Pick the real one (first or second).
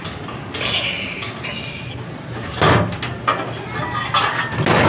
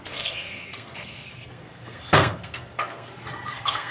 first